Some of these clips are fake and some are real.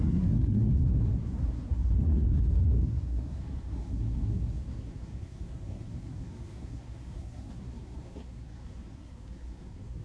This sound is fake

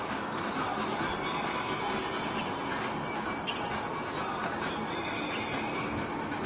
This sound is real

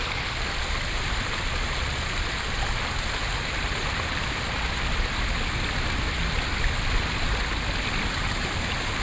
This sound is real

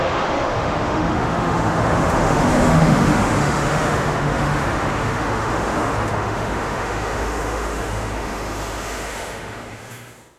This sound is fake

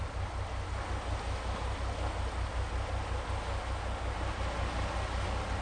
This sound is real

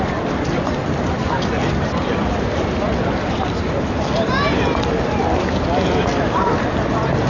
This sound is fake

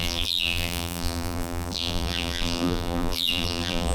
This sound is fake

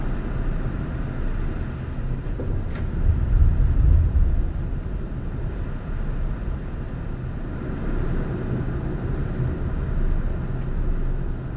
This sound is real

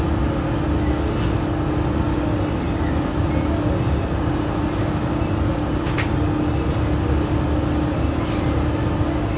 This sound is real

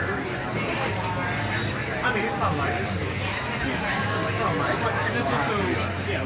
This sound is real